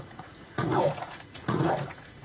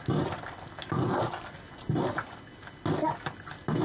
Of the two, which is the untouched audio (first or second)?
second